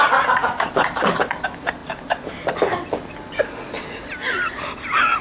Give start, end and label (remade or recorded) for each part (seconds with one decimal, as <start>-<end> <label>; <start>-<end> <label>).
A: 0.0-5.2 recorded